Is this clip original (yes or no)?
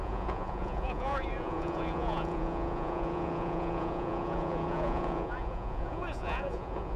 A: no